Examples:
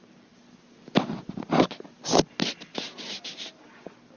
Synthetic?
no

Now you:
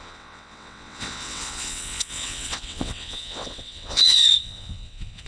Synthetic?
yes